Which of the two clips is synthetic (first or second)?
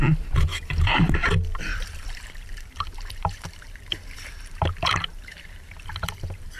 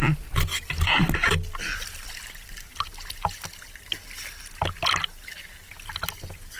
first